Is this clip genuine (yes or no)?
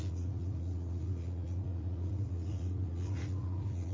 no